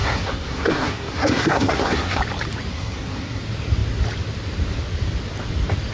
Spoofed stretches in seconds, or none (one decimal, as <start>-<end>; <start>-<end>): 0.0-2.2; 2.7-3.4